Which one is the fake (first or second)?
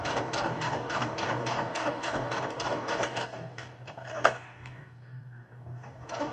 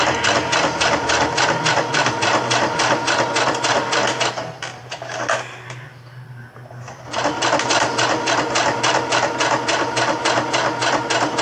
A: first